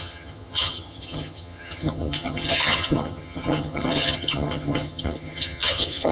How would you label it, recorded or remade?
remade